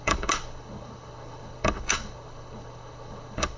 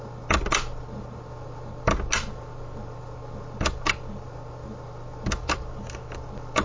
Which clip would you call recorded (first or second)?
second